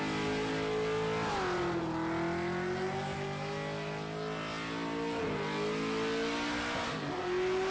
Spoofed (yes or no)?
no